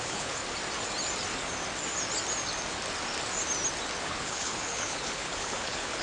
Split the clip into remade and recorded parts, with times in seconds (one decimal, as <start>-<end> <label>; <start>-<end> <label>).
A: 0.0-0.4 remade; 0.4-4.0 recorded; 4.0-6.0 remade